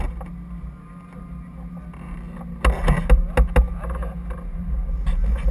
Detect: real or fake real